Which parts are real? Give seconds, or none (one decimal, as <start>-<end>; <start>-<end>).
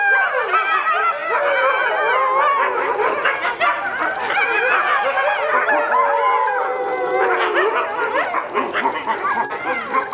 0.0-10.1